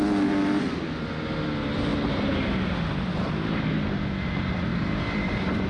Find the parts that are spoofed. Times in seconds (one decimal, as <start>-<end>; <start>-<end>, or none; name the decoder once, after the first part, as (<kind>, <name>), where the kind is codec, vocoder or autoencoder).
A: none